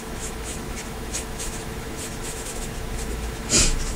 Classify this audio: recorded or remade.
remade